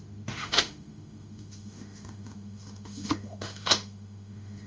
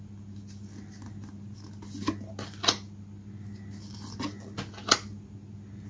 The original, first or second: second